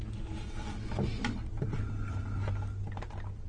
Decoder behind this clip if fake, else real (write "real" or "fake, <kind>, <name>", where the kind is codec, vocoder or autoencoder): real